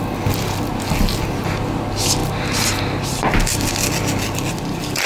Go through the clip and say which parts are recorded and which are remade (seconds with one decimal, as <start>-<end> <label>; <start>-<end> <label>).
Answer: 0.0-5.1 recorded